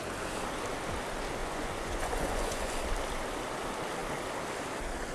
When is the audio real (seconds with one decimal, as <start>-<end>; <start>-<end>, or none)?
0.0-1.4; 2.8-5.1